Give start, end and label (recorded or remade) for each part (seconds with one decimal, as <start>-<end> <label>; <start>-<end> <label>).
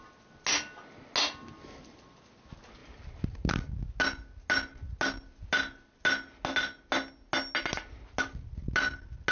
0.0-9.3 recorded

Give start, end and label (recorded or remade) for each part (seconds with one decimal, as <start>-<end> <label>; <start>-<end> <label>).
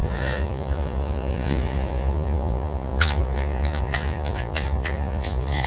0.0-5.7 remade